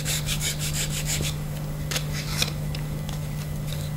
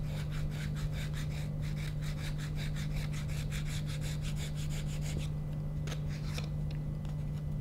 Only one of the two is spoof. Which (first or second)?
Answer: first